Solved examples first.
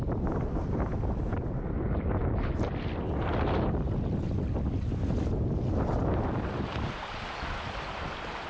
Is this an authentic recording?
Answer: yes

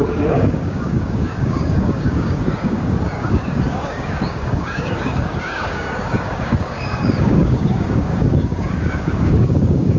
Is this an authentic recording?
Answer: no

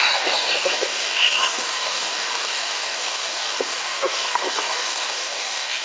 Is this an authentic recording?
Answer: no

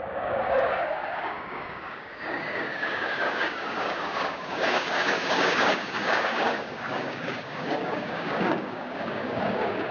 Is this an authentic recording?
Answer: no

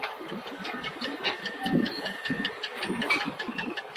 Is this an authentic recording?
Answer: no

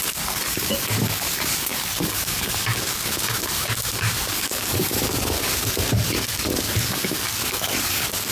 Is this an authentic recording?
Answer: no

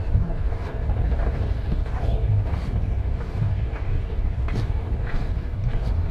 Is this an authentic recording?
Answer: no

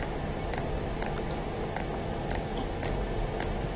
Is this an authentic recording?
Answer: yes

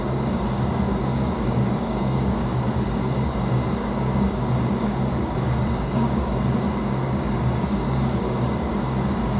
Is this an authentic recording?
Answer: no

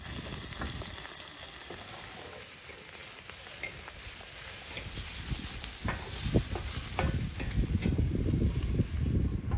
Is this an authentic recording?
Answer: yes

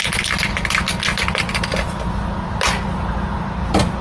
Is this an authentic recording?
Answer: yes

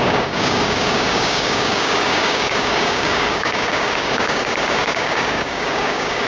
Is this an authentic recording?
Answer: no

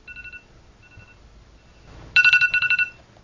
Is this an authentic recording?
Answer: yes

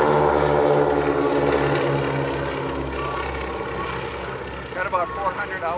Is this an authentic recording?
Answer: yes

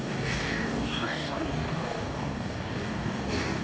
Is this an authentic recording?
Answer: no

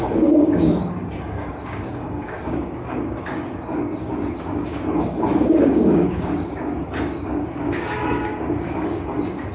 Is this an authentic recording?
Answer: no